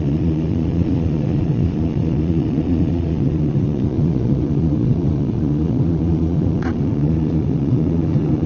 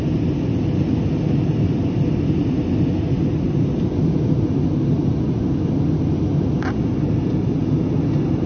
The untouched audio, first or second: second